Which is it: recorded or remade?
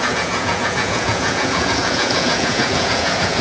remade